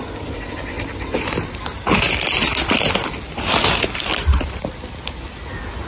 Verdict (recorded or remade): recorded